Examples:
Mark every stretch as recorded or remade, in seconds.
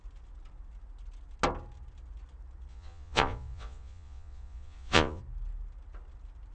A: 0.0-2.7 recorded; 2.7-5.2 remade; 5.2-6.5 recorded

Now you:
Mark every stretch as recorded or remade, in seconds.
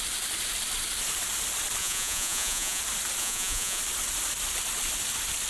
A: 0.0-1.8 recorded; 1.8-2.8 remade; 2.8-3.2 recorded; 3.2-3.8 remade; 3.8-5.5 recorded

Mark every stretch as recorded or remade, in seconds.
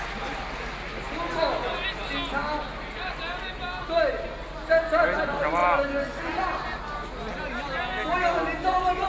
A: 0.0-9.1 recorded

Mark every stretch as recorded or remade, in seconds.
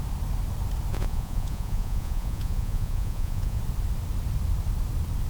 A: 0.0-0.9 recorded; 0.9-3.6 remade; 3.6-5.3 recorded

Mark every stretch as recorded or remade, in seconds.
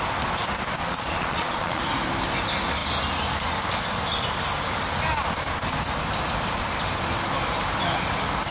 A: 0.0-0.8 recorded; 0.8-1.8 remade; 1.8-8.5 recorded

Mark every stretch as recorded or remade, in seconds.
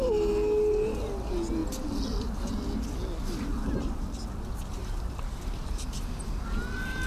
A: 0.0-7.1 recorded